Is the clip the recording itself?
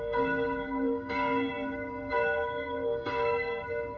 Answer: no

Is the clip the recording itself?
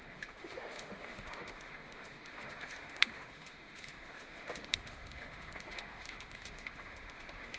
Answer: no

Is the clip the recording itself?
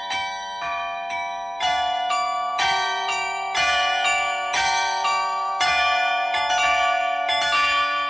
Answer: no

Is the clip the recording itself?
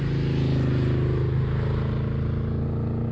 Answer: yes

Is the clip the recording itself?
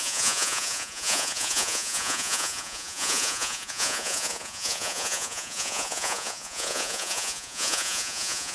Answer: no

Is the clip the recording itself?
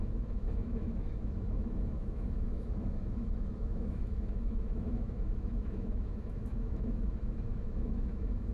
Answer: no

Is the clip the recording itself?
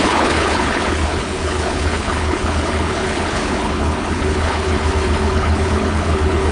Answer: no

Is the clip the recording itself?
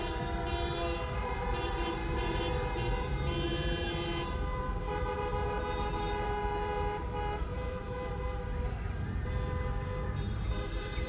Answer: no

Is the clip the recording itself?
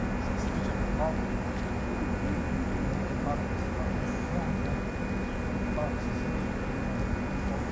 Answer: yes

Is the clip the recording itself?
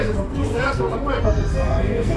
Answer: no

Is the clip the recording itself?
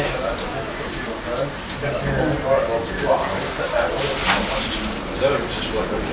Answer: yes